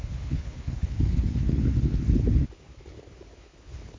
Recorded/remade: remade